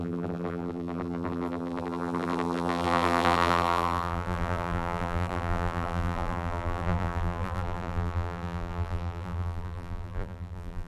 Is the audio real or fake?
fake